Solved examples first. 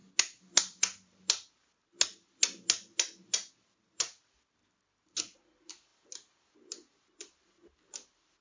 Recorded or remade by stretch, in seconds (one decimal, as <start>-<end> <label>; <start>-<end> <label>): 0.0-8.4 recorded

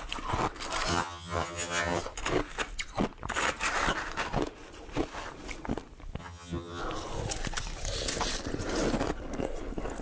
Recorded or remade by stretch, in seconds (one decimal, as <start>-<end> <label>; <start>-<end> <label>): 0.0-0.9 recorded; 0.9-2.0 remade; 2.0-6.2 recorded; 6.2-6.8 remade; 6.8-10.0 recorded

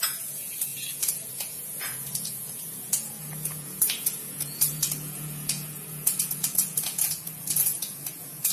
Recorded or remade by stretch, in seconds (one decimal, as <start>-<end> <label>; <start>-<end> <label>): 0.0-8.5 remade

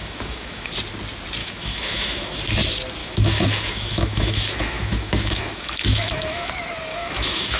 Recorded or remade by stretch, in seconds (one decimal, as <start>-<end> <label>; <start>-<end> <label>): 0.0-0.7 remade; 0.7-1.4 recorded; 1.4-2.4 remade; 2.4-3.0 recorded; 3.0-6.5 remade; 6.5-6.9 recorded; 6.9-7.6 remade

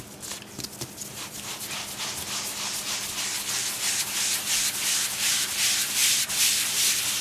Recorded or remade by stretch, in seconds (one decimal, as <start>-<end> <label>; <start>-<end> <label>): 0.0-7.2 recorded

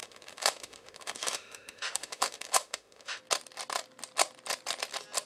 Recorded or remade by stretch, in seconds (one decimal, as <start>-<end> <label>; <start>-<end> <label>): 0.0-3.2 remade; 3.2-5.3 recorded